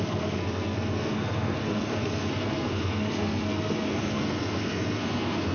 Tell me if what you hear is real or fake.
fake